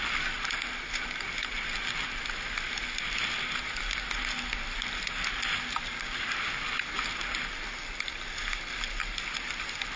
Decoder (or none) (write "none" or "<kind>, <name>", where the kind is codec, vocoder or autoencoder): none